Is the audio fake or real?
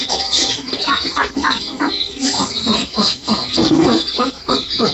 fake